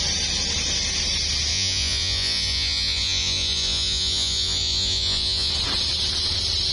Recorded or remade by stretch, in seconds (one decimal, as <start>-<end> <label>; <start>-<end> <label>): 0.0-1.5 recorded; 1.5-5.5 remade; 5.5-6.7 recorded